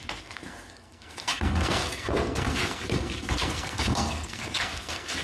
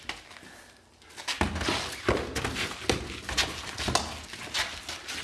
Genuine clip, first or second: second